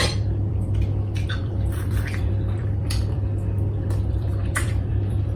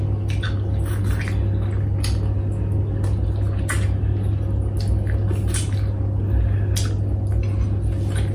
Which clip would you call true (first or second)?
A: second